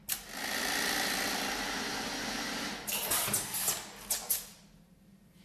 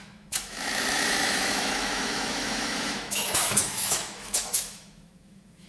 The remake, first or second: second